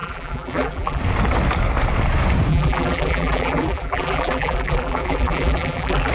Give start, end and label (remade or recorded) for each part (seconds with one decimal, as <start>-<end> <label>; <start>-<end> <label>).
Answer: 0.0-1.0 remade; 1.0-2.5 recorded; 2.5-6.1 remade

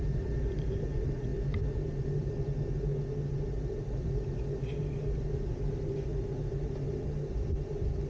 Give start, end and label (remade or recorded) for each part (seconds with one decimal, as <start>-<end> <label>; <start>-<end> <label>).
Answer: 0.0-1.3 remade; 1.3-2.0 recorded; 2.0-2.9 remade; 2.9-3.6 recorded; 3.6-5.5 remade; 5.5-8.1 recorded

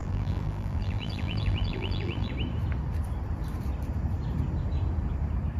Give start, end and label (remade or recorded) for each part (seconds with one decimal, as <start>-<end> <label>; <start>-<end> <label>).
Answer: 0.0-2.3 remade; 2.3-5.6 recorded

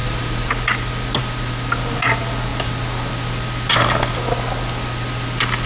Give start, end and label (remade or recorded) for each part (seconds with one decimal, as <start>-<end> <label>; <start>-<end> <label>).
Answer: 0.0-0.5 remade; 0.5-5.7 recorded